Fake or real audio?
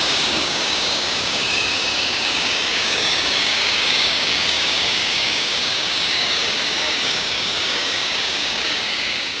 fake